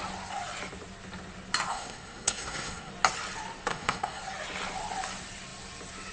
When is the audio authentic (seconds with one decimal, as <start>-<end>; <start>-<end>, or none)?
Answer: 0.0-1.7; 2.9-3.7; 4.2-6.1